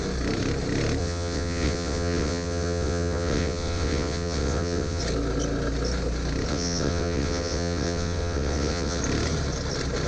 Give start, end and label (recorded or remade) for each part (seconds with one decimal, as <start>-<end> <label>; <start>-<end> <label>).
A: 0.0-1.0 recorded; 1.0-5.0 remade; 5.0-6.5 recorded; 6.5-9.0 remade; 9.0-10.1 recorded